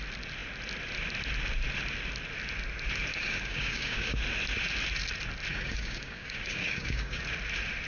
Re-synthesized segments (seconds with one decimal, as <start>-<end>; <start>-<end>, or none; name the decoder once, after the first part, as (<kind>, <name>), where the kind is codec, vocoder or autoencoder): 3.1-4.2 (codec, DAC); 5.5-7.2